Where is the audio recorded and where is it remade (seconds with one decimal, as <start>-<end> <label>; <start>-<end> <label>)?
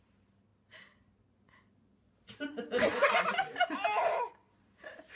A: 0.0-5.2 recorded